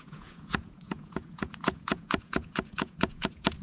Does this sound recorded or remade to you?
remade